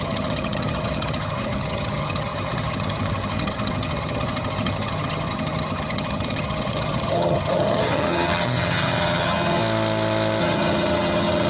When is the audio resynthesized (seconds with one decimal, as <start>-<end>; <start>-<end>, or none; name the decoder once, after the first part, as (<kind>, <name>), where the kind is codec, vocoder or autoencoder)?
0.0-9.6 (vocoder, HiFi-GAN); 10.4-11.5